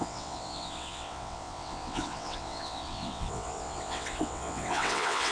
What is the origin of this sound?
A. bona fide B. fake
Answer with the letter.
B